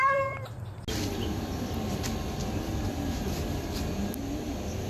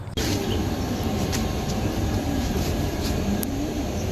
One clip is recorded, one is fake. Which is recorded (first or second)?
first